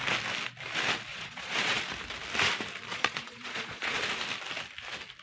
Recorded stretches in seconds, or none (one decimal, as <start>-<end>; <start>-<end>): 0.0-1.1; 1.8-2.9; 4.0-5.2